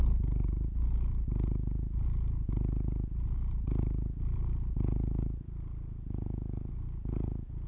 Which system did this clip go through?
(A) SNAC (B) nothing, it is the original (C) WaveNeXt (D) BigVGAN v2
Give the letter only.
B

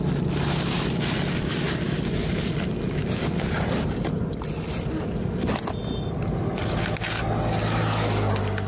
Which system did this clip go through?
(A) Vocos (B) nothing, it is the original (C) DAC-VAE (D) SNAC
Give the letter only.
B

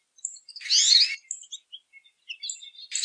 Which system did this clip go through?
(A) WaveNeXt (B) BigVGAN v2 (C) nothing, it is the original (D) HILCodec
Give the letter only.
C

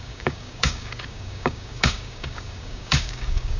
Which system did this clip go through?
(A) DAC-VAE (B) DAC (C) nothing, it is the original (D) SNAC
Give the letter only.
B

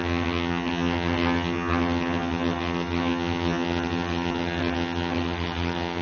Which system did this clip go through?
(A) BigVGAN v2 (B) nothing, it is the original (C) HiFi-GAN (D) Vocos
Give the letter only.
C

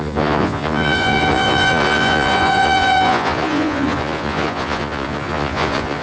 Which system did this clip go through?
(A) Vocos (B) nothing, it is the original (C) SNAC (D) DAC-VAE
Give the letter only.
A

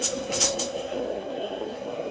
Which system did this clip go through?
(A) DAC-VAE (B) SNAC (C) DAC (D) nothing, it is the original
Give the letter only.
B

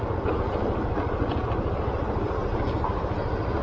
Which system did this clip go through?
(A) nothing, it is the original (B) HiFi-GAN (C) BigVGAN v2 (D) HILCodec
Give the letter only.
A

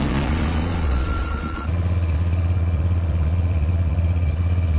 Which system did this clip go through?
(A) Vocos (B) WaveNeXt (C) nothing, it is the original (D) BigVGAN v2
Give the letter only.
A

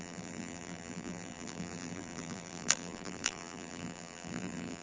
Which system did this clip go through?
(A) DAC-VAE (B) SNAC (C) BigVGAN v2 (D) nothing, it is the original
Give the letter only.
C